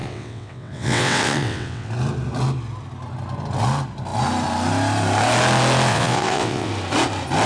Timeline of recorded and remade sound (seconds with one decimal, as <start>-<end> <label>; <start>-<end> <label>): 0.0-1.9 remade; 1.9-5.9 recorded; 5.9-6.7 remade; 6.7-7.5 recorded